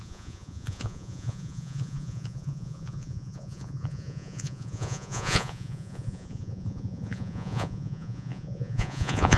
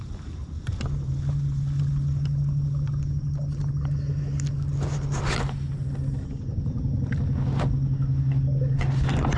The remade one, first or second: first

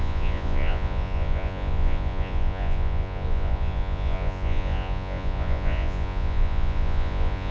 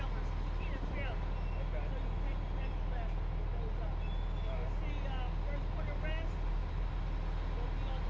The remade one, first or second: first